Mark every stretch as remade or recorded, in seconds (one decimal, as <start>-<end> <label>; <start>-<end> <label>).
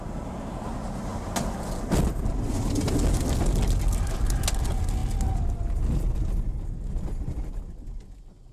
0.0-8.5 recorded